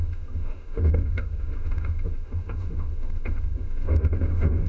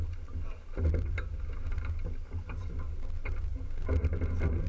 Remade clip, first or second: first